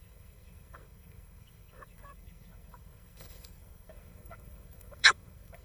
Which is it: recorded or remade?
remade